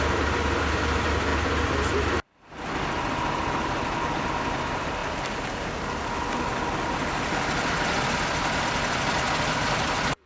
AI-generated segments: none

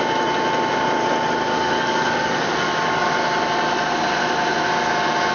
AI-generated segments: 1.5-3.1 (codec, DAC)